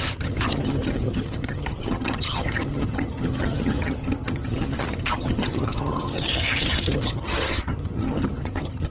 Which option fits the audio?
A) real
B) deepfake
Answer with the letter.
B